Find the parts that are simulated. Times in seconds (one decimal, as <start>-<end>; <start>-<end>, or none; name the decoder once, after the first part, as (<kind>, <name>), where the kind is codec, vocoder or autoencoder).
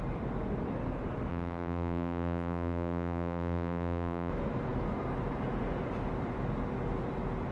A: 1.3-4.3 (vocoder, BigVGAN v2)